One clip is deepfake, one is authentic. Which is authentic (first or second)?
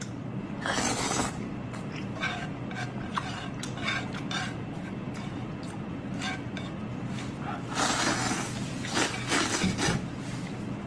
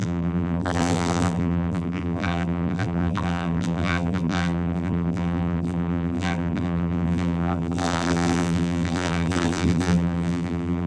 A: first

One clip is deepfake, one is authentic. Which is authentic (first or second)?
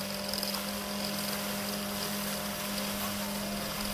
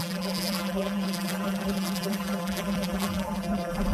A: first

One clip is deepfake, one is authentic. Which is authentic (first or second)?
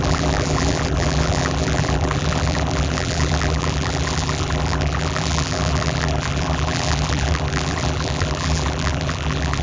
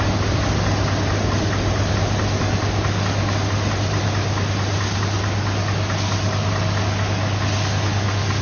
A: second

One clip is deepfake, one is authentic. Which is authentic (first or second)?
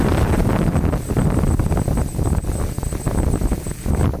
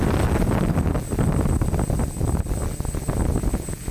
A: second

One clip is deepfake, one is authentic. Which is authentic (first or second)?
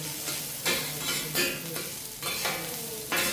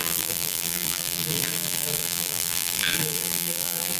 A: first